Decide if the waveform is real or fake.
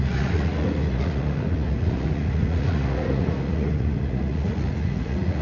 fake